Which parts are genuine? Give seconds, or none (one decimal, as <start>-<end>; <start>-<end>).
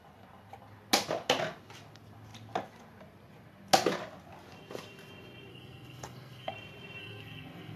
0.0-5.5; 6.5-7.0